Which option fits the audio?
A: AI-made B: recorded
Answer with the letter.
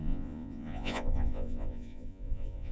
A